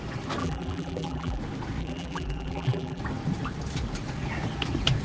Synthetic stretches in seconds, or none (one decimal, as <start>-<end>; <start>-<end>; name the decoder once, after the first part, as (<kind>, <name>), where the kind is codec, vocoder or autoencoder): 0.4-1.4 (vocoder, BigVGAN v2); 1.8-3.0